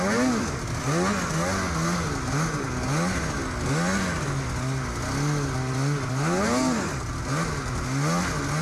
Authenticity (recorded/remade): recorded